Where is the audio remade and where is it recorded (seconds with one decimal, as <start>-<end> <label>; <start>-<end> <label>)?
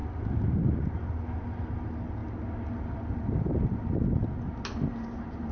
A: 0.0-5.5 recorded